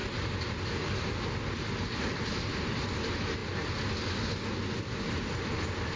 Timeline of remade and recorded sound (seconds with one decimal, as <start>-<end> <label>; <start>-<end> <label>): 0.0-6.0 recorded